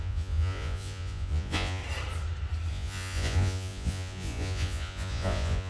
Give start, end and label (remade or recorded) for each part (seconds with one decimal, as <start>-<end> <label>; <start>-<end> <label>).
0.0-1.8 remade; 1.8-2.7 recorded; 2.7-5.7 remade